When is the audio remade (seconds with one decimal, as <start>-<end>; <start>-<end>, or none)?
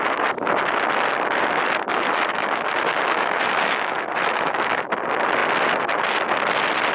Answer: 1.9-4.9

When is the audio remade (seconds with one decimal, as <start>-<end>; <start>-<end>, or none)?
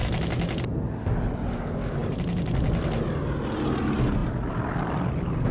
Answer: 0.0-0.6